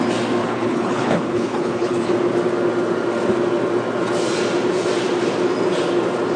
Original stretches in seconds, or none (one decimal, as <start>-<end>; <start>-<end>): 0.0-0.4; 2.1-6.4